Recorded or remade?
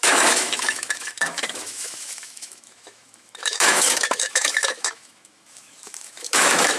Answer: remade